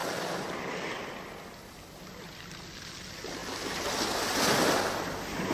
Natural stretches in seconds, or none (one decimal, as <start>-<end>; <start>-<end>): 0.0-5.5